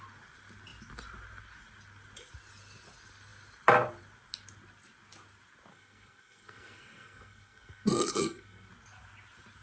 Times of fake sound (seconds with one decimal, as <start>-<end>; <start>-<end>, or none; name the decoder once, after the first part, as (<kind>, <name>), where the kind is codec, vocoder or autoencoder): 5.7-8.7 (codec, SNAC)